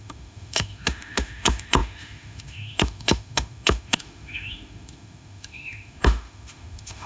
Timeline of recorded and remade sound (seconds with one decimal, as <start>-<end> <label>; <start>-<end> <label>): 0.0-7.1 remade